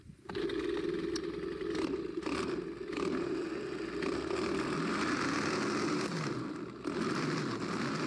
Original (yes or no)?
yes